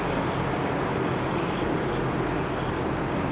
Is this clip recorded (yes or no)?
yes